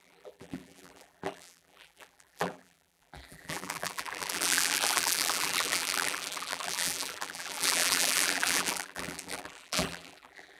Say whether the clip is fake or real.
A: fake